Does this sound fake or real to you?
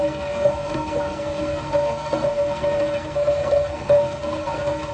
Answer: fake